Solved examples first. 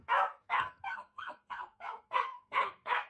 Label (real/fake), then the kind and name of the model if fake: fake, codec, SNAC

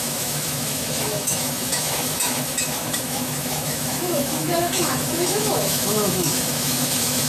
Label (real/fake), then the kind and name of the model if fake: fake, autoencoder, DAC-VAE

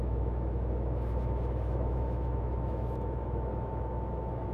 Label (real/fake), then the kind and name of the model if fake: fake, autoencoder, DAC-VAE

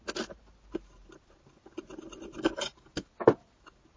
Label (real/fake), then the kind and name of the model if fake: real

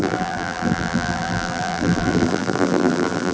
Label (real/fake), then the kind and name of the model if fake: fake, vocoder, BigVGAN v2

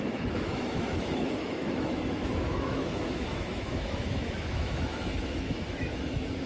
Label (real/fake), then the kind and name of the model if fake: fake, autoencoder, DAC-VAE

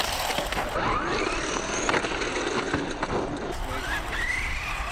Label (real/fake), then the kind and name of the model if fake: real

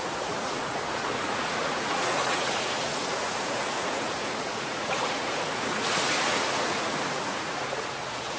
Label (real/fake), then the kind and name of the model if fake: fake, vocoder, Vocos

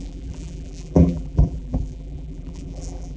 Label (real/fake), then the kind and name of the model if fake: fake, vocoder, BigVGAN v2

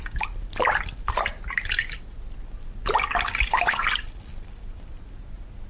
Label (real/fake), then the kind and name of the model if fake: real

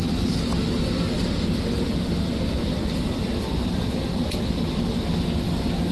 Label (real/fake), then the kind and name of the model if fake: real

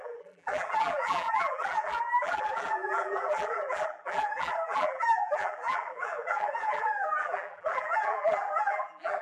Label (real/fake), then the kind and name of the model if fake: fake, vocoder, BigVGAN v2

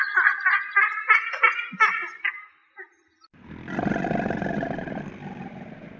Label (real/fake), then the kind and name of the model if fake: real